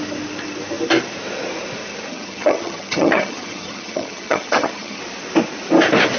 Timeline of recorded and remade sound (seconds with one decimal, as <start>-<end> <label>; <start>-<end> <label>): 0.0-2.1 recorded; 2.1-5.0 remade; 5.0-6.2 recorded